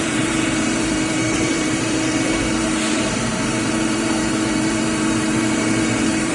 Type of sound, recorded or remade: remade